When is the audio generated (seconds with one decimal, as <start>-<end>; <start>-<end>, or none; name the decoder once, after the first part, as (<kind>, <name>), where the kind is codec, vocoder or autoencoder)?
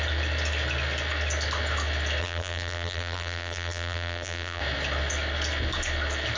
2.2-4.6 (vocoder, BigVGAN v2)